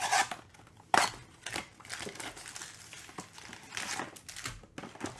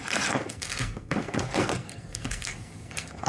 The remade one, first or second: second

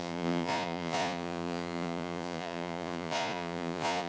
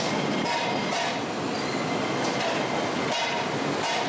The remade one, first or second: first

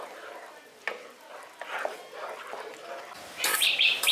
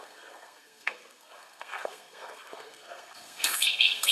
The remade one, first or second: second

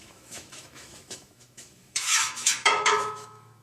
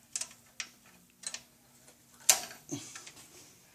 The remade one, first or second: first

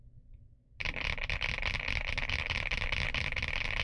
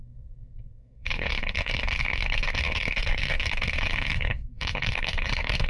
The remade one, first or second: second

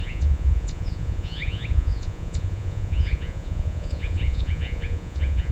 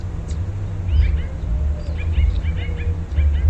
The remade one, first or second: first